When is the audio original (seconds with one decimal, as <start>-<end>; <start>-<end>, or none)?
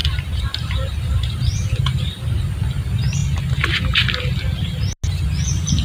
2.4-5.8